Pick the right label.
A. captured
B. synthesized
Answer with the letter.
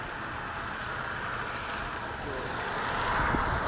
A